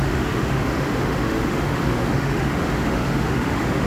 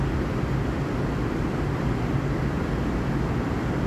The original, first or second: second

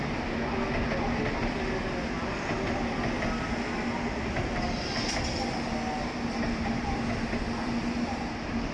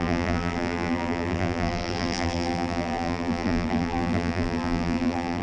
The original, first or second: first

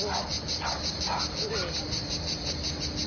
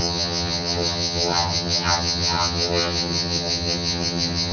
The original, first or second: first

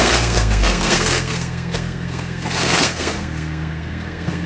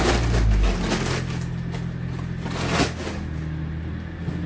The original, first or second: second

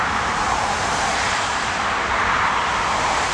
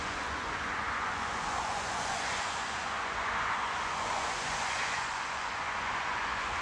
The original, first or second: first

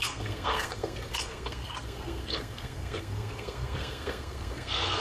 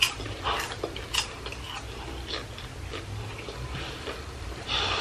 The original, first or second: second